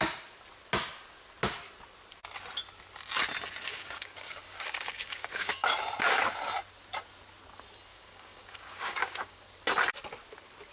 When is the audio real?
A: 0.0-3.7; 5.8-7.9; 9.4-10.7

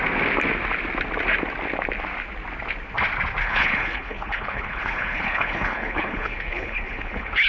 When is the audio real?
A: 0.0-3.4

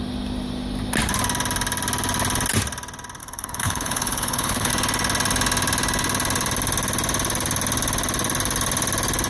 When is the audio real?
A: 0.0-3.2; 4.7-9.3

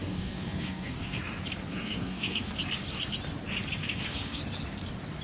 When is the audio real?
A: 1.2-1.7; 2.5-3.8; 4.4-5.2

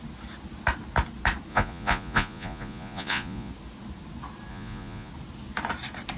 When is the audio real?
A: 0.0-1.5; 3.5-4.5; 5.1-6.2

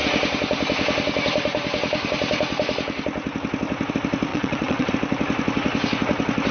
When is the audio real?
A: 0.0-4.3; 4.9-6.5